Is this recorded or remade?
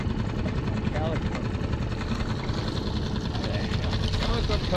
recorded